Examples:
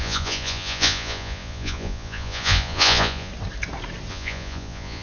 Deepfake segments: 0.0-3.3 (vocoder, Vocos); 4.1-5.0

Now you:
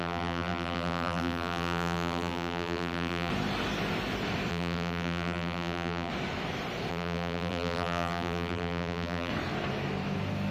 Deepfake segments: 0.0-3.3 (vocoder, BigVGAN v2); 4.5-6.1; 6.9-9.3

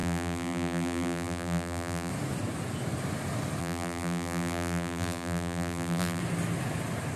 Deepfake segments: 0.0-2.1 (vocoder, BigVGAN v2); 3.6-6.2

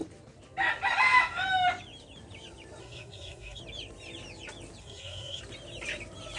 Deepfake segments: 2.8-3.6 (codec, SNAC); 4.8-5.4

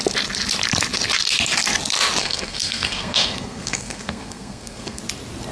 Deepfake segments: 2.2-5.0 (codec, SNAC)

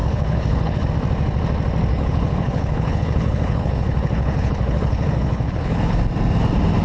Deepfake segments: 0.0-0.9 (codec, HILCodec); 1.9-6.0

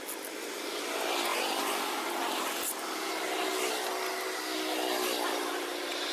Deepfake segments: none